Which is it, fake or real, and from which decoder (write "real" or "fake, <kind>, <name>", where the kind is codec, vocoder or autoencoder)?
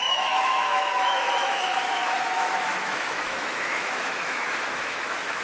fake, autoencoder, DAC-VAE